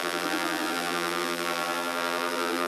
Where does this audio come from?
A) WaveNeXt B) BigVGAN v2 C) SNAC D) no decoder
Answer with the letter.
B